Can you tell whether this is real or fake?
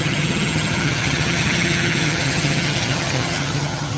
fake